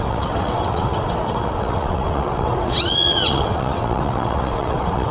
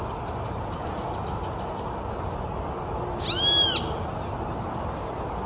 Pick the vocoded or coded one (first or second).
first